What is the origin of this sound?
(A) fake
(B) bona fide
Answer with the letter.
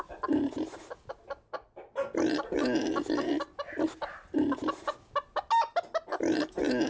B